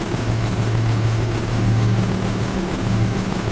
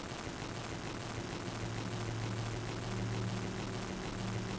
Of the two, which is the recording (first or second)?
second